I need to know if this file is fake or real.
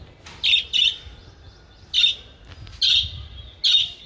real